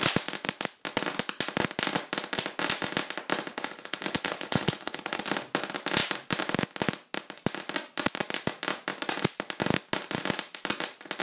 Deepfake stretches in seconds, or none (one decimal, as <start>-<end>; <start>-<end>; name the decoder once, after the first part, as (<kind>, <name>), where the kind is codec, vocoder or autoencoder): 3.5-5.2 (codec, HILCodec)